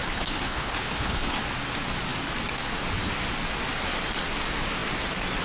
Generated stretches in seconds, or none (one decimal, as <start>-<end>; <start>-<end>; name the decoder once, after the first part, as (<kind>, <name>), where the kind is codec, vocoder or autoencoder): 0.0-1.4 (codec, HILCodec)